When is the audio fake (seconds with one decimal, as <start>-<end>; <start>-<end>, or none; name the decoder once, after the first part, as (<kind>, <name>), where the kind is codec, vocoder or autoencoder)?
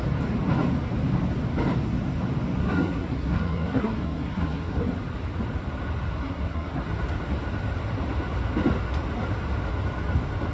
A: 2.6-4.8 (codec, SNAC); 6.2-6.8